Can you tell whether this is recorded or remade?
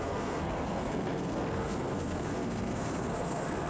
remade